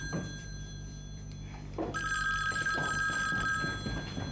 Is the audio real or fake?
fake